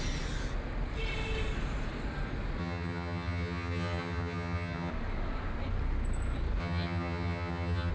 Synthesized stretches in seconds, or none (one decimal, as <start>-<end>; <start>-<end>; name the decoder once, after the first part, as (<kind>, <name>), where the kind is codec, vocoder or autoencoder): 2.6-4.9 (vocoder, HiFi-GAN); 6.6-7.9